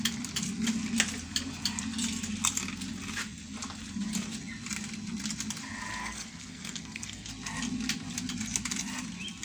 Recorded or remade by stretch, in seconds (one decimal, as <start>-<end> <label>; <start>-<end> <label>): 0.0-6.0 recorded; 6.0-7.3 remade; 7.3-9.4 recorded